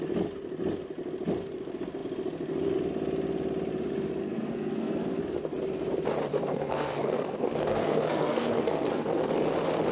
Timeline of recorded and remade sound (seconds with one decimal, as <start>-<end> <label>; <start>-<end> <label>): 0.0-4.2 recorded; 4.2-5.2 remade; 5.2-6.3 recorded; 6.3-9.3 remade; 9.3-9.9 recorded